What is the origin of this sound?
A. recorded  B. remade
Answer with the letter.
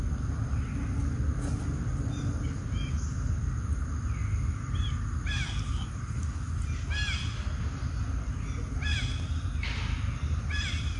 A